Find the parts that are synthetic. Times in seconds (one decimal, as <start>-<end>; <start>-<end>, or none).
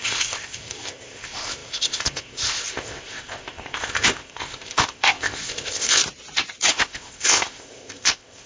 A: 0.0-6.0; 6.7-8.5